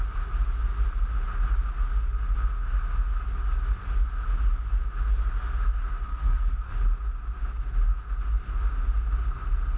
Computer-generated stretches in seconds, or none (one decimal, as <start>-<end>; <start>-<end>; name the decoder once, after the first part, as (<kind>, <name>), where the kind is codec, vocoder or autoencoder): 6.1-6.7 (codec, SNAC)